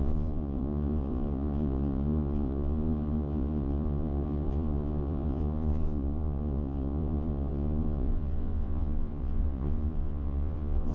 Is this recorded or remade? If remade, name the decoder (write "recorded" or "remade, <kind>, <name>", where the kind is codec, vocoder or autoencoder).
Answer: remade, vocoder, Vocos